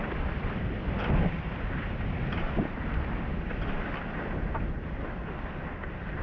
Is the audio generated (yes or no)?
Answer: no